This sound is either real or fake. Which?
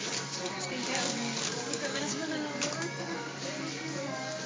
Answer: fake